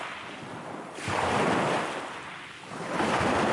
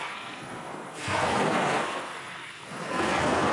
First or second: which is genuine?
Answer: first